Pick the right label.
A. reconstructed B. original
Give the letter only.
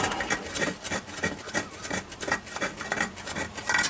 B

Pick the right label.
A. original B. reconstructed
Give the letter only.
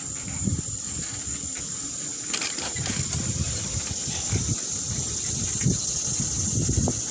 A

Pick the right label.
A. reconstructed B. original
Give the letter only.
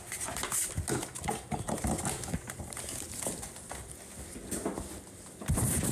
B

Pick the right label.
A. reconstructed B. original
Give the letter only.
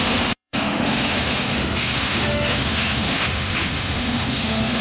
A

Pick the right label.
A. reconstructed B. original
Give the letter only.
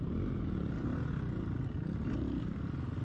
B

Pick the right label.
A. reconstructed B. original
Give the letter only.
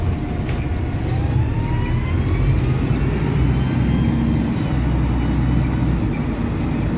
B